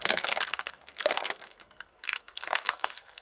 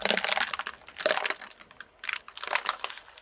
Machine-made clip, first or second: first